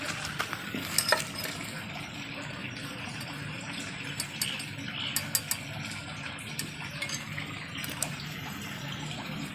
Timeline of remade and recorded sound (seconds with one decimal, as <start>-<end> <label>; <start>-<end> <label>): 0.0-2.6 recorded; 2.6-4.2 remade; 4.2-6.0 recorded; 6.0-9.5 remade